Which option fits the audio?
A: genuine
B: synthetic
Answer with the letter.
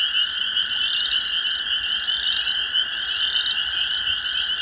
A